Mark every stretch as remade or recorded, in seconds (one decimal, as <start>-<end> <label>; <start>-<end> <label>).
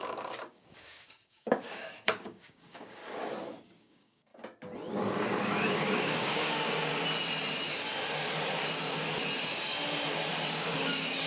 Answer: 0.0-3.0 remade; 3.0-3.8 recorded; 3.8-4.3 remade; 4.3-5.1 recorded; 5.1-6.9 remade; 6.9-10.5 recorded; 10.5-11.3 remade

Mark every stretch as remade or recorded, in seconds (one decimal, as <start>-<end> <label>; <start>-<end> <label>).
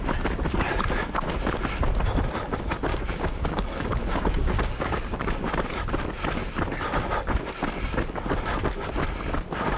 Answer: 0.0-2.9 recorded; 2.9-5.5 remade; 5.5-9.8 recorded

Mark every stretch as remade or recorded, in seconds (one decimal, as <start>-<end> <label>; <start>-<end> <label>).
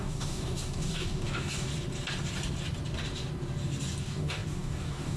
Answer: 0.0-1.7 remade; 1.7-4.0 recorded; 4.0-5.2 remade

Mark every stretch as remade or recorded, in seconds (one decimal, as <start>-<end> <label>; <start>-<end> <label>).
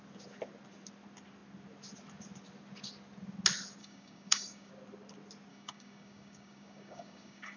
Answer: 0.0-3.8 recorded; 3.8-4.7 remade; 4.7-5.5 recorded; 5.5-7.6 remade